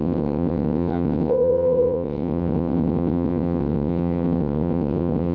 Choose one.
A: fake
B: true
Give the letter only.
A